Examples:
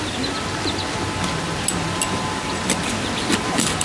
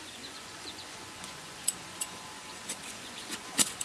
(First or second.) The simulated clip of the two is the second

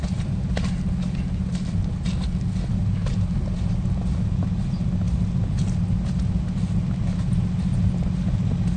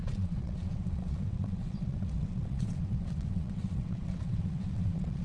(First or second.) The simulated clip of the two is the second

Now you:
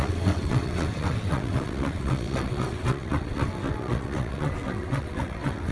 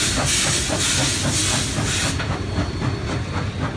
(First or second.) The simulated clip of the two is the first